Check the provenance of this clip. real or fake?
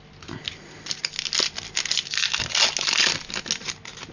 real